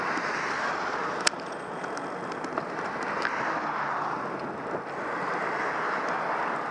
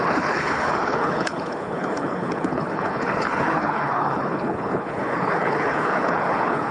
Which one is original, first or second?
first